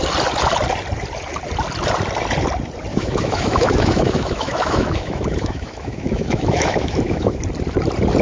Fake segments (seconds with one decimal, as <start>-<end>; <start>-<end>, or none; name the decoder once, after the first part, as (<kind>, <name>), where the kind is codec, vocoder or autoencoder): 2.9-7.4 (autoencoder, DAC-VAE)